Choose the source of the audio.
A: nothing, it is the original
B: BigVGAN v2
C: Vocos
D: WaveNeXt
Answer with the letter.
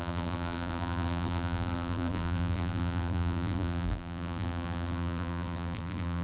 B